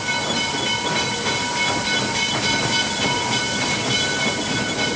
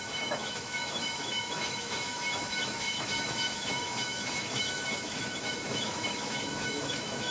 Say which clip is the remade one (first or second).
second